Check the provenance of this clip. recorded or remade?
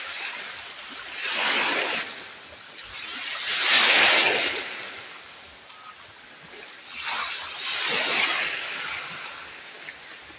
recorded